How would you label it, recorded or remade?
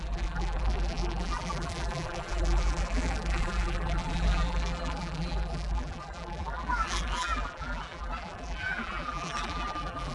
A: remade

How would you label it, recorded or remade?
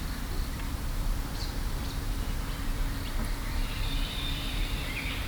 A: remade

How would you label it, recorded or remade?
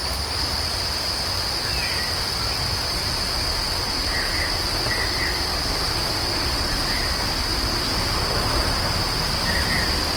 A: recorded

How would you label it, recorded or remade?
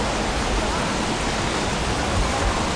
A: recorded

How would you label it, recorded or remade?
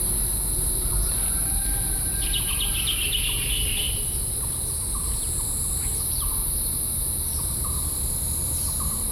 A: remade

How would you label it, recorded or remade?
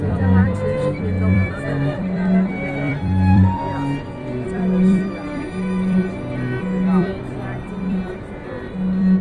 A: remade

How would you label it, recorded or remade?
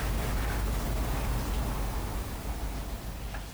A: recorded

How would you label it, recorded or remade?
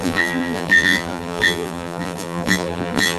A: remade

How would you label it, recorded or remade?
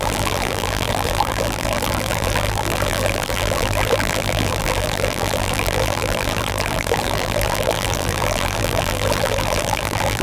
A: remade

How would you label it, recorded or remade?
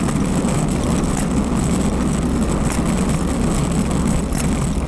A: recorded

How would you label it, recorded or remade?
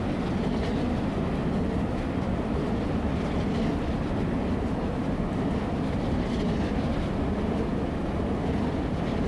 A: recorded